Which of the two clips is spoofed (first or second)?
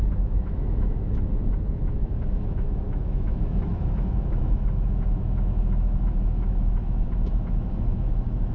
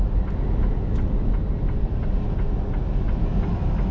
first